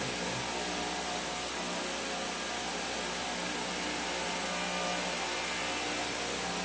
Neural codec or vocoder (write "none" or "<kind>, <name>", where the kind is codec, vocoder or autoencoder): none